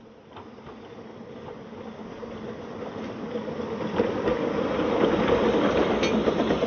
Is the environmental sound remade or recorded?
recorded